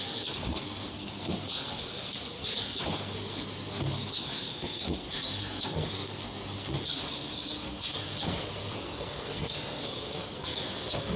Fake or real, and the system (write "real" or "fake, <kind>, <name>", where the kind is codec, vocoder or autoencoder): fake, codec, SNAC